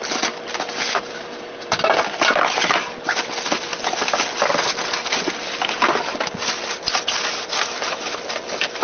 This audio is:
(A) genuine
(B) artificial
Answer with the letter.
A